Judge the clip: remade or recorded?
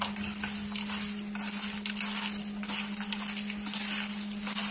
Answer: recorded